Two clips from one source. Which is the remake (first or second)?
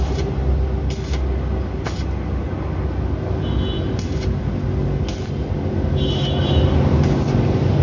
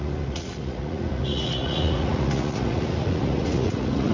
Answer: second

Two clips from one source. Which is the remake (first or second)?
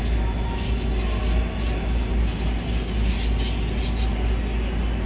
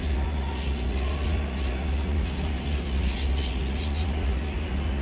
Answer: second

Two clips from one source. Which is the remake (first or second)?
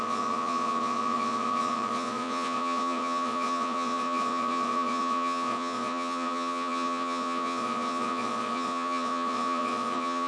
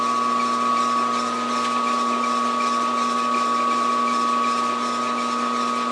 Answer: first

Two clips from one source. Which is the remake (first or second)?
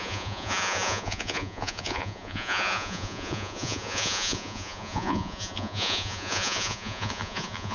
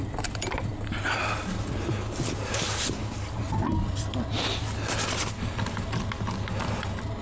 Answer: first